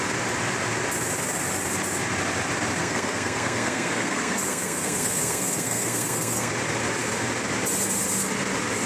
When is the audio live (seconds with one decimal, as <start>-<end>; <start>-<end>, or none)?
0.0-2.8; 6.5-8.9